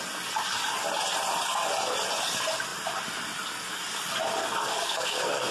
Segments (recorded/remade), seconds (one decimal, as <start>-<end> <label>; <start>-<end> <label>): 0.0-4.4 recorded; 4.4-5.5 remade